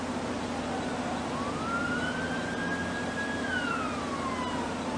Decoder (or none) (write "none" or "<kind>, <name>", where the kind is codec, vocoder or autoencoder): none